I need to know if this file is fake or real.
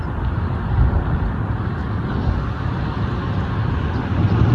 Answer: real